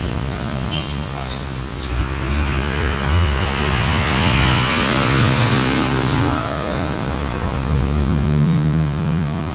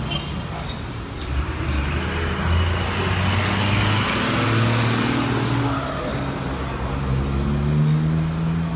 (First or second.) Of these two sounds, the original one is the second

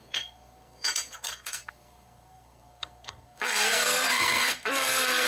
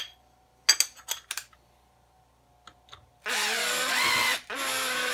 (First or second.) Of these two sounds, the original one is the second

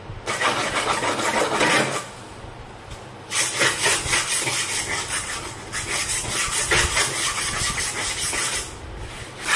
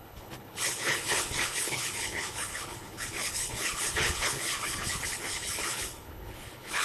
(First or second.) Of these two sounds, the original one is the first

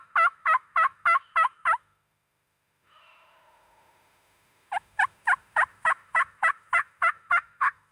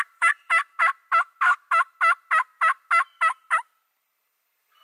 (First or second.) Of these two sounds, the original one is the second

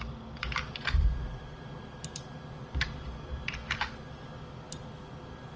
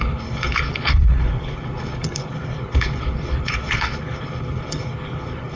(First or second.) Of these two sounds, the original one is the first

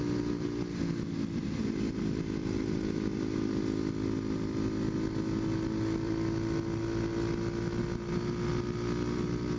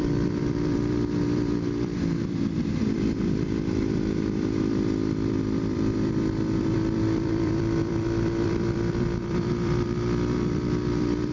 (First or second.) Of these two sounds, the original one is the first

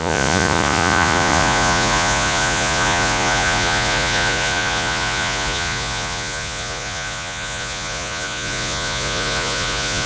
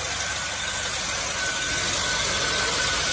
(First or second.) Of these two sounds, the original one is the second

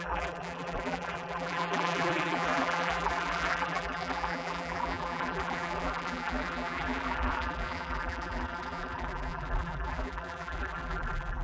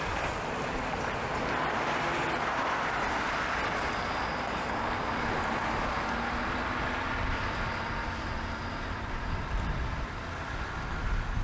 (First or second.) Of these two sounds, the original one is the second